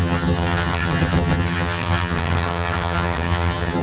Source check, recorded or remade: remade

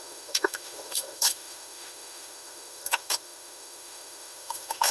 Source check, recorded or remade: remade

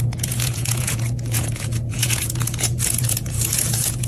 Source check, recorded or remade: remade